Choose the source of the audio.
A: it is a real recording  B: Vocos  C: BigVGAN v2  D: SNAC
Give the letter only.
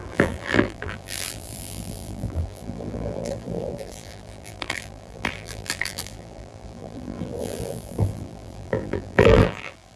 C